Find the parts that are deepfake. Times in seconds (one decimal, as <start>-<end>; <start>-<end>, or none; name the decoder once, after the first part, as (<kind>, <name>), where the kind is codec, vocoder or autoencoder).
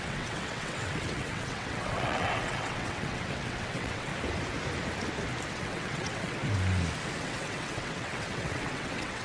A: 0.0-4.1 (vocoder, WaveNeXt); 5.5-6.4; 7.2-9.2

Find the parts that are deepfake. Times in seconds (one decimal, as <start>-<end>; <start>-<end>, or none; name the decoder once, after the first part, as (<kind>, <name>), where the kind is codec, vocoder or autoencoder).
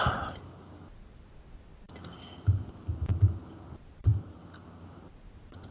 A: 0.0-3.4 (vocoder, BigVGAN v2); 4.1-4.8